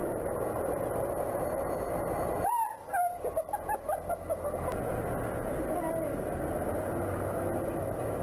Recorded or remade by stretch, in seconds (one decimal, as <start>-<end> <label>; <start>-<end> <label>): 0.0-1.5 remade; 1.5-8.2 recorded